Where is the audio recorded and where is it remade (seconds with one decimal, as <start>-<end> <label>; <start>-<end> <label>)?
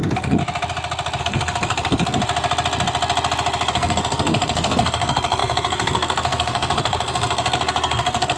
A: 0.0-0.4 remade; 0.4-1.2 recorded; 1.2-2.2 remade; 2.2-3.7 recorded; 3.7-8.4 remade